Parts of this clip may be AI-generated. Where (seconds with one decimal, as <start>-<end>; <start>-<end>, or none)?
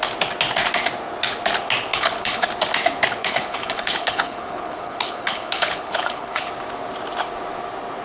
1.9-2.5; 3.2-6.5